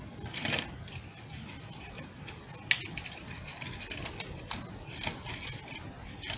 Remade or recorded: recorded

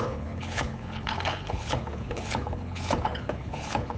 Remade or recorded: remade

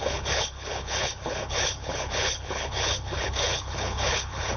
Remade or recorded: remade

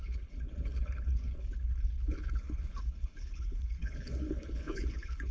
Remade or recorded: remade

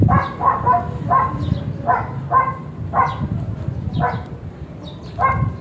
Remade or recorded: recorded